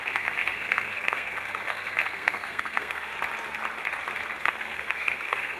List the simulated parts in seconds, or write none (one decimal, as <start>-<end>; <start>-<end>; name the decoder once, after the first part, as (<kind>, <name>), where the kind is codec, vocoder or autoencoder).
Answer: 0.0-3.1 (codec, SNAC); 4.4-5.6

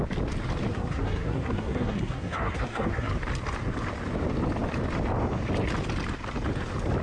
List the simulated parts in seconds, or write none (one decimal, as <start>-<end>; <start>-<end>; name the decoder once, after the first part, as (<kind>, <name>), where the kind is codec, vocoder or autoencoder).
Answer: 0.7-3.1 (codec, SNAC)

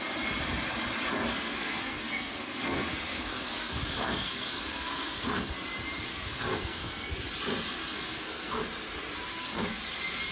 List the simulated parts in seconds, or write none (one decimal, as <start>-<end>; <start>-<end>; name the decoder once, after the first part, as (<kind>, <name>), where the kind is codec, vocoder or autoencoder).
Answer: 1.3-5.5 (codec, SNAC); 6.1-7.1; 7.8-8.6; 9.3-9.8